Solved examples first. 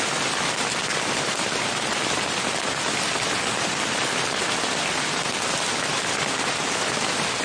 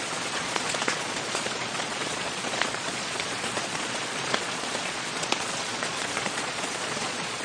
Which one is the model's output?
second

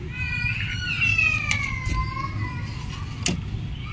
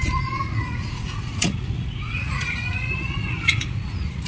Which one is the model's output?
second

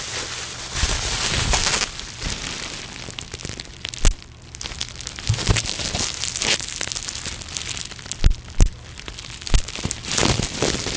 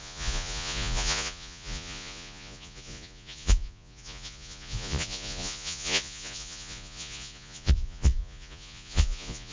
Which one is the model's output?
second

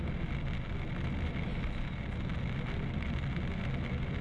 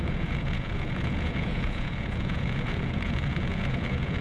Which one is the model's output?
second